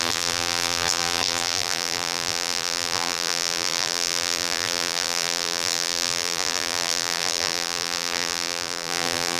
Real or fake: fake